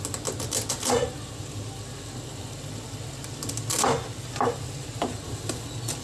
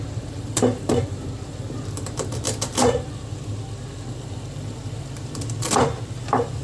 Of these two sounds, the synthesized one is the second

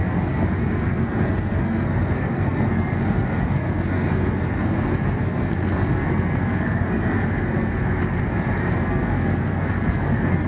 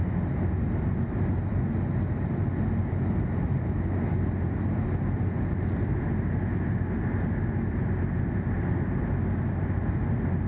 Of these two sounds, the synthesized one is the first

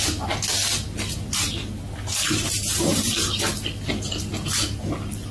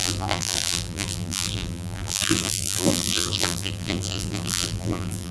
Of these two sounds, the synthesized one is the second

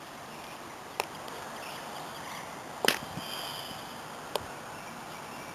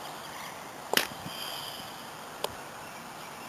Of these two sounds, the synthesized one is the second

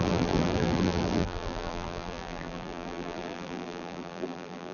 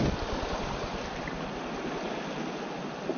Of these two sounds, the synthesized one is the first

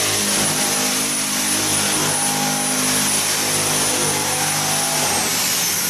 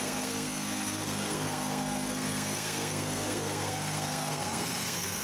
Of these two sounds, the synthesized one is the second